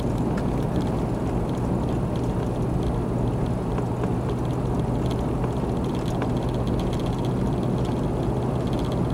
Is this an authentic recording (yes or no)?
yes